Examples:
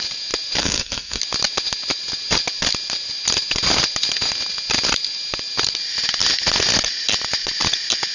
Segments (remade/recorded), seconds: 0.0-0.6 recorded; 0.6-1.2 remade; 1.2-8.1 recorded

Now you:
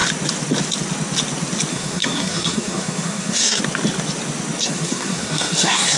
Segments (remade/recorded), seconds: 0.0-1.7 recorded; 1.7-3.6 remade; 3.6-4.6 recorded; 4.6-6.0 remade

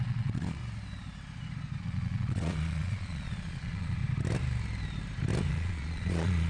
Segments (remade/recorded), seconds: 0.0-0.6 remade; 0.6-1.8 recorded; 1.8-4.0 remade; 4.0-5.5 recorded; 5.5-6.5 remade

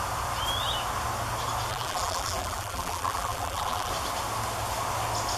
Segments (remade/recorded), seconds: 0.0-1.7 recorded; 1.7-3.9 remade; 3.9-5.4 recorded